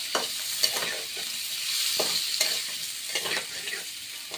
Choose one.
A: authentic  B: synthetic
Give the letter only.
B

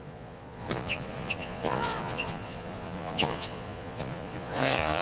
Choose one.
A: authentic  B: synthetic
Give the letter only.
B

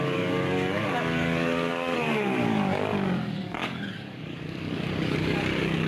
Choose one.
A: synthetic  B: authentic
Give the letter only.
A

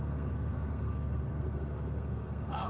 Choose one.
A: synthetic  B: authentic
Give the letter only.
A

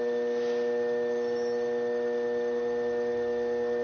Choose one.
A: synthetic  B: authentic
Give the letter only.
B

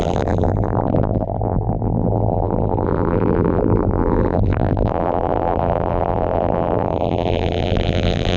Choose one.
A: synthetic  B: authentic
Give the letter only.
A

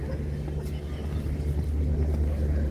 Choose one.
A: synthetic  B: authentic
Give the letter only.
B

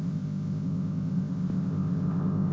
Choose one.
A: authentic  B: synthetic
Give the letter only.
B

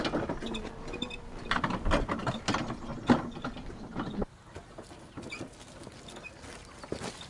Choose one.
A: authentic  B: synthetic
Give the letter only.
A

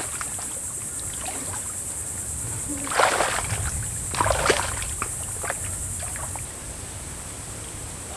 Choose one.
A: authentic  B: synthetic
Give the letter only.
A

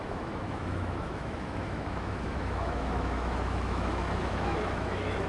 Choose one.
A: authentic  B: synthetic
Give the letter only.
B